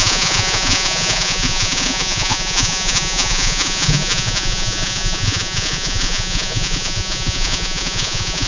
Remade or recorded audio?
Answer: remade